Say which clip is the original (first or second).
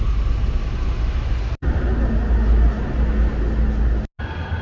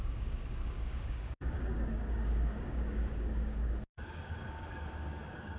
first